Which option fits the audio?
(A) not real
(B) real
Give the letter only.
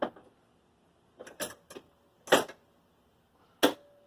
B